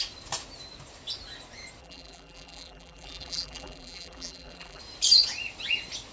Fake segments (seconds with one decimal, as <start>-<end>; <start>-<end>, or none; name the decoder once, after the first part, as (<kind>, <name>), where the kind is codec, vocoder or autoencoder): 1.8-4.8 (vocoder, BigVGAN v2)